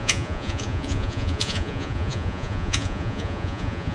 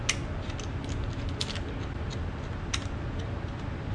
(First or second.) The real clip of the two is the second